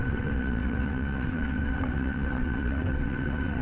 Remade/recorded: remade